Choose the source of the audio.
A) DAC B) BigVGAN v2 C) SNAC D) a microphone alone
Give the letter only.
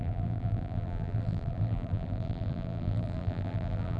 B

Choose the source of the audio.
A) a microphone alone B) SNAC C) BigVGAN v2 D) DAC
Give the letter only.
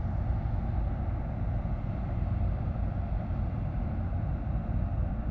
A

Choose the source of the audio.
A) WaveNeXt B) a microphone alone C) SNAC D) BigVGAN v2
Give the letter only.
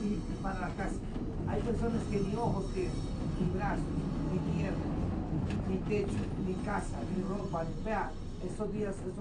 B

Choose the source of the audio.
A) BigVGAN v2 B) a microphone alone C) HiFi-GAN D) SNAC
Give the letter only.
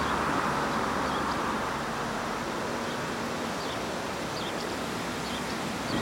B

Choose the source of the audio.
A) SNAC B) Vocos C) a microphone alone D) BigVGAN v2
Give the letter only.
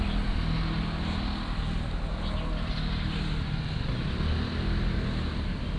C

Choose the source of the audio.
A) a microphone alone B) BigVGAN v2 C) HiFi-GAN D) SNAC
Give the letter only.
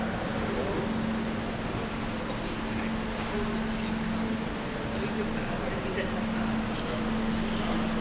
A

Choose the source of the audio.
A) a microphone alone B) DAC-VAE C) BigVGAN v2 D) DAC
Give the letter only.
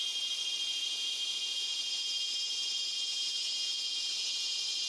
A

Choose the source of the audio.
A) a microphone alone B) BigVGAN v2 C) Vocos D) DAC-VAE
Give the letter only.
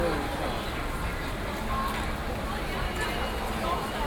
A